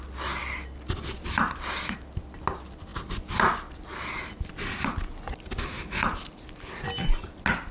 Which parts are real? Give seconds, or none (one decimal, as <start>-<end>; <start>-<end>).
0.0-7.7